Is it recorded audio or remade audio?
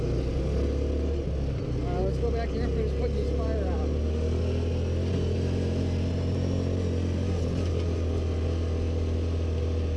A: recorded